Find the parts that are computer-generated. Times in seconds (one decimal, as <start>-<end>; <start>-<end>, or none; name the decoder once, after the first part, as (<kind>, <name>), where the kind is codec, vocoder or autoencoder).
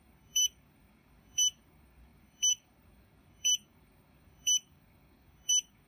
0.0-5.9 (codec, DAC)